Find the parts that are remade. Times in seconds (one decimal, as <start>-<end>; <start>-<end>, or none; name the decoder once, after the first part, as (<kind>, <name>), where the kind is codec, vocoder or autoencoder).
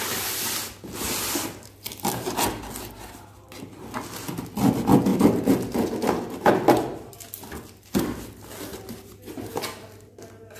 none